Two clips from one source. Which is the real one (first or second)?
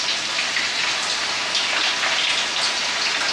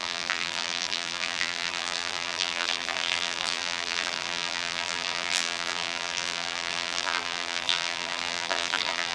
first